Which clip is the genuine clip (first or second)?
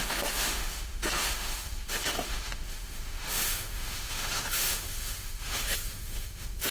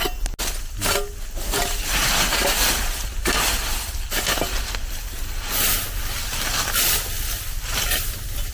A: second